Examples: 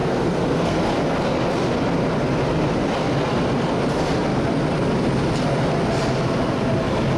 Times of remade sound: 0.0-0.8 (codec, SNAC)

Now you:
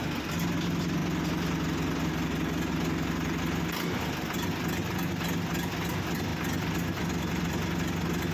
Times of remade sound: none

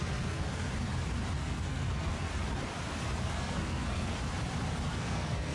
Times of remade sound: 0.0-0.7 (codec, SNAC); 1.4-2.3; 3.2-4.2; 4.9-5.5

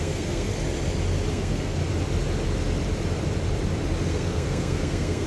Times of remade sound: 0.0-0.5 (codec, SNAC); 1.3-1.8; 4.1-5.3

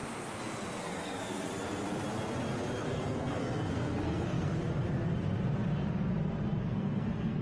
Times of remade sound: 0.8-1.5 (codec, SNAC); 2.8-4.5; 6.6-7.4